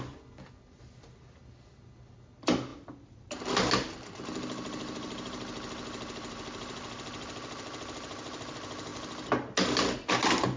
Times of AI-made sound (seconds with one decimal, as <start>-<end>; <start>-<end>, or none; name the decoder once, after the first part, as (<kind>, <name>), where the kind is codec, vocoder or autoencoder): none